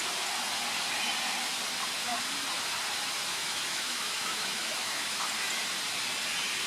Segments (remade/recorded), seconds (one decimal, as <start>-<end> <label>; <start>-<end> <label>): 0.0-3.3 recorded; 3.3-5.2 remade; 5.2-6.7 recorded